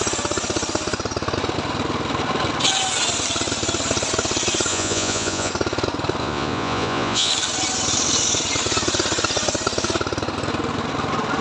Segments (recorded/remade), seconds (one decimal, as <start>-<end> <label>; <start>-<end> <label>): 0.0-4.7 recorded; 4.7-5.5 remade; 5.5-6.2 recorded; 6.2-7.3 remade; 7.3-11.4 recorded